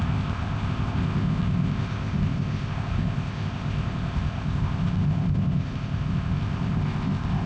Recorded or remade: remade